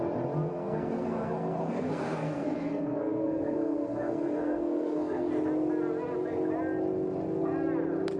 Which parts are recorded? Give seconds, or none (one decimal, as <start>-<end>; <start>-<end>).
0.0-0.5; 5.3-8.2